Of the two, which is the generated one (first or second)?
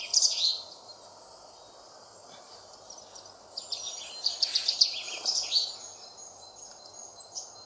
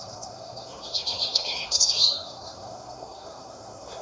second